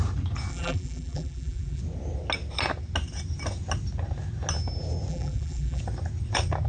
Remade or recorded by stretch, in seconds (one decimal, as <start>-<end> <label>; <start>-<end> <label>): 0.0-0.5 recorded; 0.5-1.8 remade; 1.8-5.1 recorded; 5.1-5.8 remade; 5.8-6.7 recorded